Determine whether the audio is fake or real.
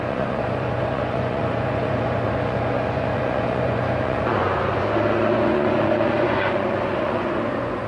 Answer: fake